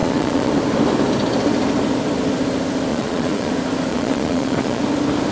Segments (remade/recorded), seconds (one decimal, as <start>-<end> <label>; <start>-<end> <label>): 0.0-0.5 remade; 0.5-2.9 recorded; 2.9-3.5 remade; 3.5-3.9 recorded; 3.9-4.8 remade; 4.8-5.3 recorded